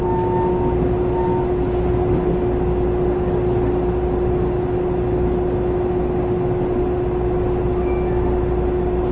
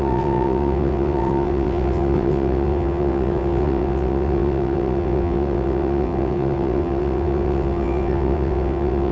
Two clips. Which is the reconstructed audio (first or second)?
second